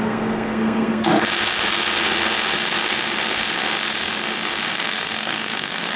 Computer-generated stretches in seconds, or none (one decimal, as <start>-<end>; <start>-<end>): 0.0-1.1; 4.7-6.0